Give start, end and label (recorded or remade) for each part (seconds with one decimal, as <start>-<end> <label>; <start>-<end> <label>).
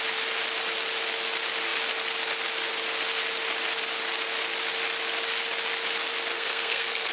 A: 0.0-6.3 recorded; 6.3-7.1 remade